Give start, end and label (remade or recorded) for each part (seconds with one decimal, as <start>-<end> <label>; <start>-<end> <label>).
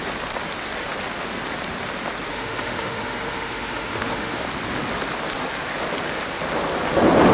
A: 0.0-2.3 recorded; 2.3-4.4 remade; 4.4-7.3 recorded